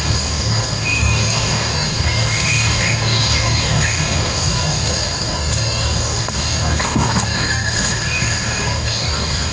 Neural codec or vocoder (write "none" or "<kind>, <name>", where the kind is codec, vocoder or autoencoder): codec, DAC